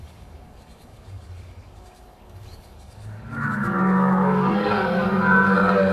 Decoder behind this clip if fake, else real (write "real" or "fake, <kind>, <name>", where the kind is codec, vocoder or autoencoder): fake, codec, DAC